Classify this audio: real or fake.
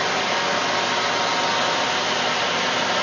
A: real